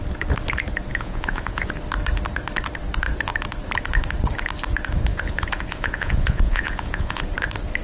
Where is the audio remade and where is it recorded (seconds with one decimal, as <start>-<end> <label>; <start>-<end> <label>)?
0.0-0.9 recorded; 0.9-1.7 remade; 1.7-5.1 recorded; 5.1-7.2 remade; 7.2-7.8 recorded